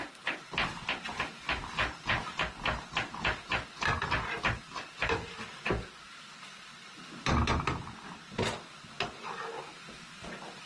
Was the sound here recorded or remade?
recorded